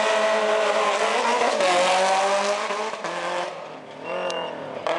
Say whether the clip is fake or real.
real